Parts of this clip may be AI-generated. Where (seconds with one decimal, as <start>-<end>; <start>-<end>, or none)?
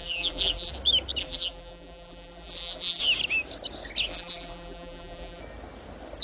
0.0-0.7; 1.2-3.0; 4.1-5.4